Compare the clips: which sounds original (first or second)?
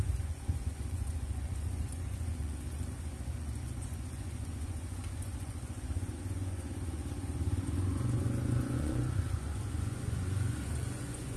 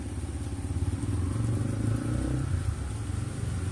second